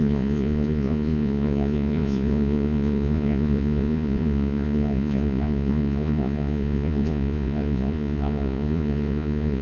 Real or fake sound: fake